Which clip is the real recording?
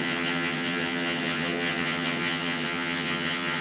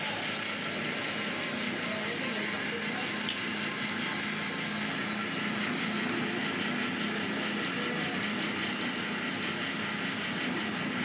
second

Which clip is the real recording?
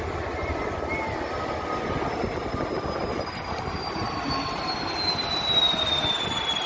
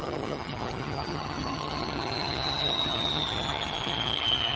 first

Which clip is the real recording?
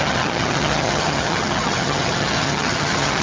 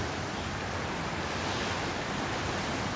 second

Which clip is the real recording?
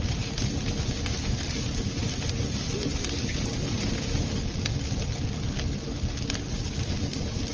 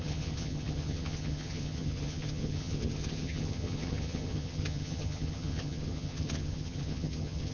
first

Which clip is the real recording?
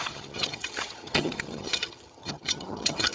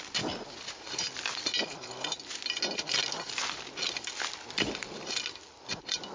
second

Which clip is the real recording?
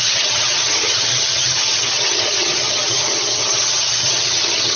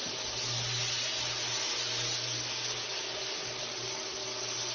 second